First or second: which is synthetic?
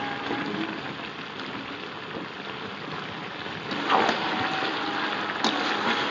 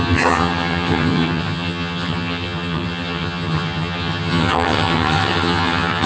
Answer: second